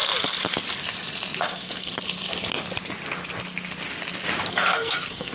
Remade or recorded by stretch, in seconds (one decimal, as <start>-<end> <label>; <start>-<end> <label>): 0.0-1.4 recorded; 1.4-1.9 remade; 1.9-4.5 recorded; 4.5-5.3 remade